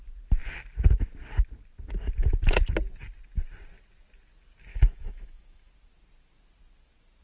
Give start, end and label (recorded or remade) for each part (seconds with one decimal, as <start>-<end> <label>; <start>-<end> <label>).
0.0-4.7 recorded; 4.7-5.7 remade; 5.7-7.2 recorded